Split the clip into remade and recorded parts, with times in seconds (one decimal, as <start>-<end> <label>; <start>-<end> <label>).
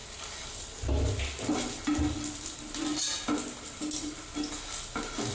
0.0-5.3 recorded